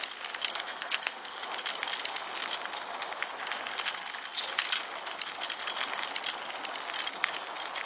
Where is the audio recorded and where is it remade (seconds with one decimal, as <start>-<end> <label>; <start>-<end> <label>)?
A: 0.0-0.5 recorded; 0.5-1.4 remade; 1.4-7.9 recorded